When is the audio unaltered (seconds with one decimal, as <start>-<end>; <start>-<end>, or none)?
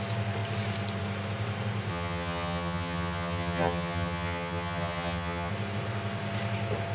0.0-1.9; 5.5-6.9